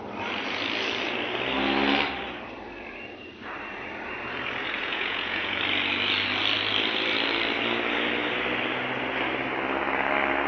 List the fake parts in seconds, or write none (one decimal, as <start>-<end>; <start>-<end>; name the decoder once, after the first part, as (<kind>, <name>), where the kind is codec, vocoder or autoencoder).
4.8-5.6 (vocoder, Vocos)